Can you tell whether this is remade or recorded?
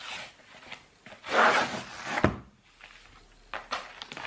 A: recorded